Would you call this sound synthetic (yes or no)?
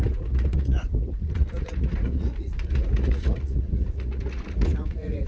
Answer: yes